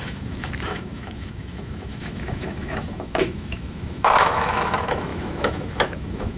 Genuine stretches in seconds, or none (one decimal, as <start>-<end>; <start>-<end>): none